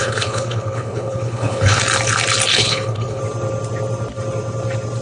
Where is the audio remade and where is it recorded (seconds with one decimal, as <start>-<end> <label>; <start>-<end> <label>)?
0.0-1.8 remade; 1.8-2.5 recorded; 2.5-3.2 remade; 3.2-5.0 recorded